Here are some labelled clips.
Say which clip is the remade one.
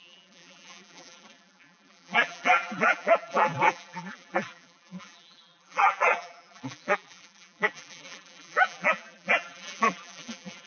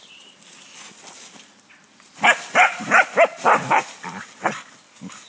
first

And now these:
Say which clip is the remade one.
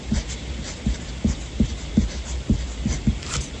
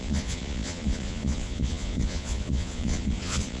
second